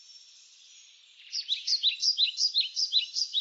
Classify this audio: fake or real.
real